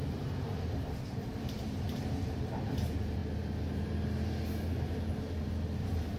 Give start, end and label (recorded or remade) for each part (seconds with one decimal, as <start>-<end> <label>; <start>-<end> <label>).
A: 0.0-3.2 remade; 3.2-5.4 recorded; 5.4-6.2 remade